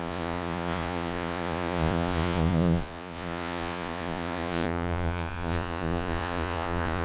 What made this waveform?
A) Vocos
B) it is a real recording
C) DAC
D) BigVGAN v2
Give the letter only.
A